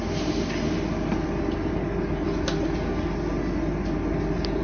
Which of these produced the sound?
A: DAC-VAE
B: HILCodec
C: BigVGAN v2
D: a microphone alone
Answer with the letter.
D